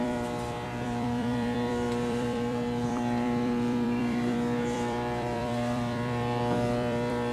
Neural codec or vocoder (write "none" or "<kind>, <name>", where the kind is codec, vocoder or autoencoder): vocoder, BigVGAN v2